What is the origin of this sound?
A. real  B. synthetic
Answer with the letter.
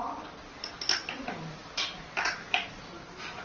A